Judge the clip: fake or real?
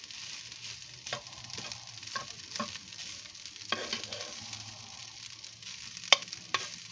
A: real